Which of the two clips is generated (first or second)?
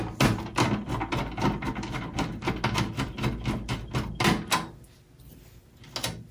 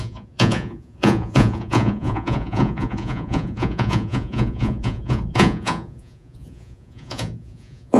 second